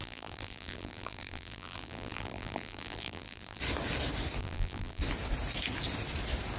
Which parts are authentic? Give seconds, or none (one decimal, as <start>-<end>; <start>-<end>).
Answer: 3.6-4.4; 5.0-6.6